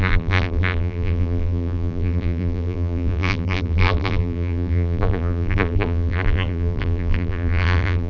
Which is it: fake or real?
fake